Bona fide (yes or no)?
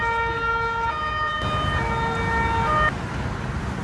yes